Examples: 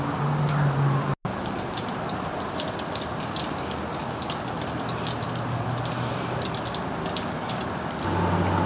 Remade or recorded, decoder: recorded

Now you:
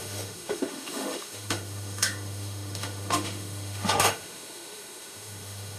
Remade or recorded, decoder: remade, autoencoder, DAC-VAE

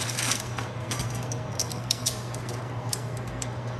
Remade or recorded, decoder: remade, codec, SNAC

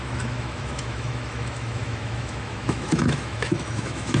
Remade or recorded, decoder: remade, autoencoder, DAC-VAE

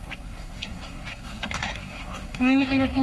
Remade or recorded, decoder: remade, codec, SNAC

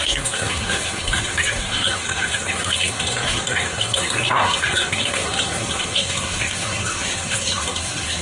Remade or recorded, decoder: remade, codec, SNAC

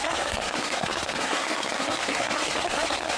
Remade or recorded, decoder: remade, codec, SNAC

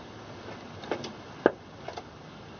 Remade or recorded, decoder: recorded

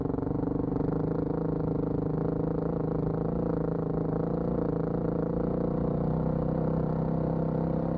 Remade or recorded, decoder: recorded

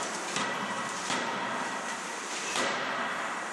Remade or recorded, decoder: remade, vocoder, BigVGAN v2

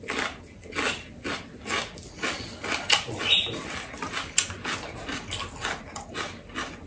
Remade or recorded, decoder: recorded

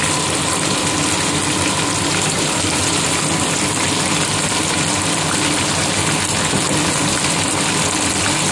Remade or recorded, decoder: recorded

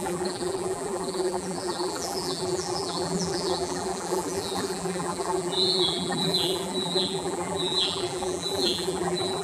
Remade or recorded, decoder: remade, vocoder, BigVGAN v2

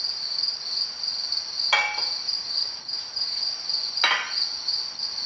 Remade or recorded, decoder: recorded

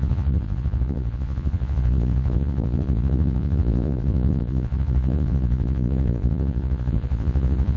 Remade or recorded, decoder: remade, vocoder, Vocos